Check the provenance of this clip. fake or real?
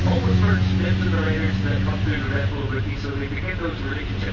real